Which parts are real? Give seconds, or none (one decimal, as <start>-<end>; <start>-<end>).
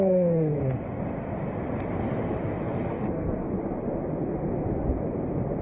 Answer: 0.6-2.7; 3.5-5.6